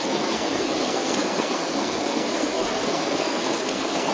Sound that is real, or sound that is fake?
fake